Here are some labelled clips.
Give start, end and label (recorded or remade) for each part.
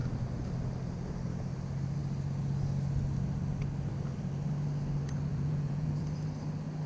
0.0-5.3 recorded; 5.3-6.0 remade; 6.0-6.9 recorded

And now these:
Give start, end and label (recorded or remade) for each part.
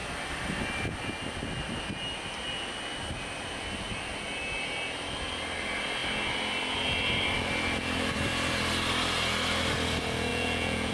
0.0-10.3 recorded; 10.3-10.9 remade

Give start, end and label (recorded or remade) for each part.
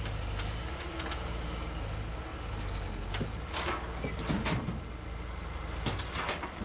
0.0-6.6 recorded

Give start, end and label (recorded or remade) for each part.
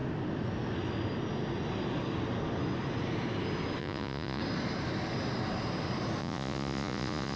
0.0-3.8 recorded; 3.8-4.4 remade; 4.4-6.2 recorded; 6.2-7.4 remade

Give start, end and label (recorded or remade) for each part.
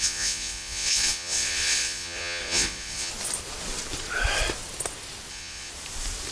0.0-3.1 remade; 3.1-5.3 recorded; 5.3-5.7 remade; 5.7-6.3 recorded